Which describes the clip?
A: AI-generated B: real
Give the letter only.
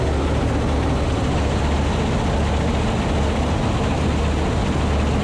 B